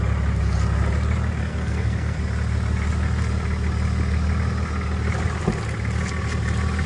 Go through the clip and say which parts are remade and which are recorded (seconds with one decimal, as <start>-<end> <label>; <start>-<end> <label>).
0.0-1.4 recorded; 1.4-2.2 remade; 2.2-6.9 recorded